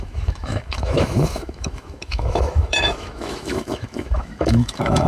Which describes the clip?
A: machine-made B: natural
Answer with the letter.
A